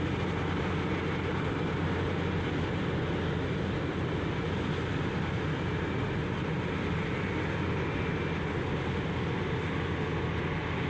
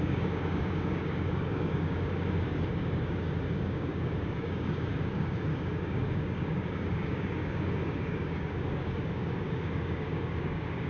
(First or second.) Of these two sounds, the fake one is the second